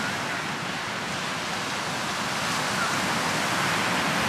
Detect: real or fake real